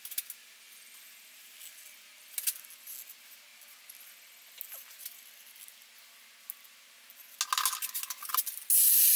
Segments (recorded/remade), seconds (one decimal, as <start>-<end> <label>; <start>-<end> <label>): 0.0-9.2 recorded